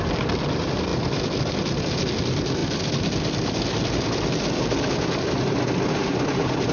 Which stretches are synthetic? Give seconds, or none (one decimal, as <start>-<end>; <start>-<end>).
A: none